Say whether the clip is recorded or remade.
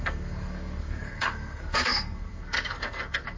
remade